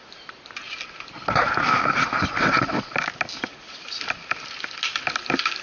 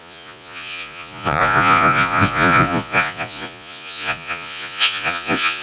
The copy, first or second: second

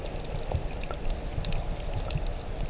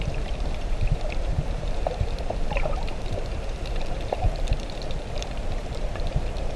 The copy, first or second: second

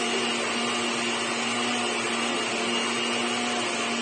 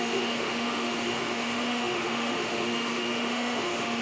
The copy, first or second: second